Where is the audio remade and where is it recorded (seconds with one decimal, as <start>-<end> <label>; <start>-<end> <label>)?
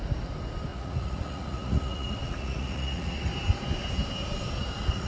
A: 0.0-0.7 recorded; 0.7-3.3 remade; 3.3-4.6 recorded; 4.6-5.1 remade